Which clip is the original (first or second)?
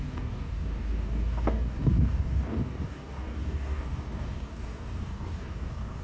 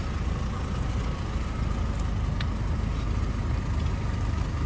second